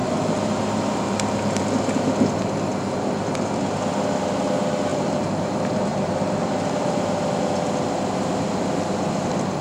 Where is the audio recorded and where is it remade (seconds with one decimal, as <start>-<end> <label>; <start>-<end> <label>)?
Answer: 0.0-1.6 remade; 1.6-4.9 recorded; 4.9-5.5 remade; 5.5-9.6 recorded